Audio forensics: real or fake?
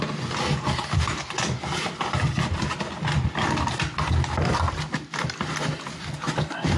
real